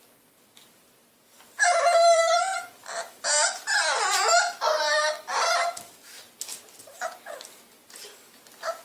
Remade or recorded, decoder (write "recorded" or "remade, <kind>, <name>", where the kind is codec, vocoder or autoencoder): recorded